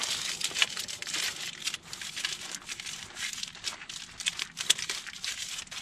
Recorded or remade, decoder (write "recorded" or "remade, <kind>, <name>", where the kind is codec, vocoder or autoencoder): recorded